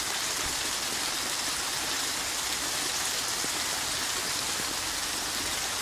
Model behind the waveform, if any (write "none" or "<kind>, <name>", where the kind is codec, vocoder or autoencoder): none